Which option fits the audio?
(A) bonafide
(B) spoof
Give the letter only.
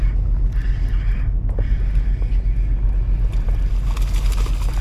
A